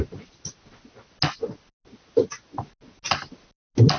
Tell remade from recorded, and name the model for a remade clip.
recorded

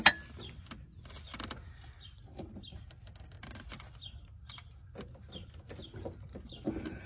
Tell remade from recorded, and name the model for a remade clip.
recorded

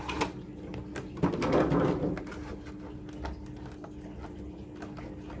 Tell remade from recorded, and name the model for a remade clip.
recorded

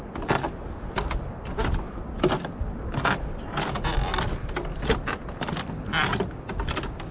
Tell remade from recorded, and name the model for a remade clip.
recorded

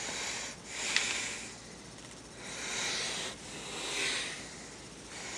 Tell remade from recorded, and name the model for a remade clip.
recorded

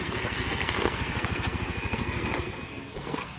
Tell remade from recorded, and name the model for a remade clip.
remade, codec, SNAC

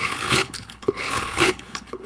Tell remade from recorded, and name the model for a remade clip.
remade, codec, HILCodec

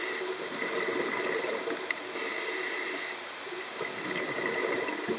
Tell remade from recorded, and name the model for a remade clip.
recorded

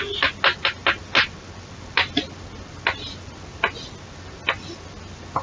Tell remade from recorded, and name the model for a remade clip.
recorded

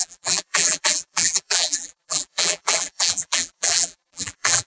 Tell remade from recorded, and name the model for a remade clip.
remade, vocoder, BigVGAN v2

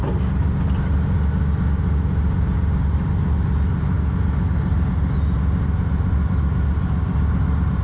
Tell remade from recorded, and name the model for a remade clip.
recorded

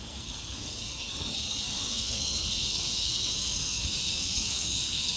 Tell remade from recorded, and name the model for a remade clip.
remade, codec, SNAC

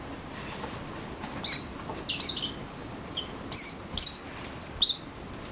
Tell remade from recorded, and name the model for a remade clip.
recorded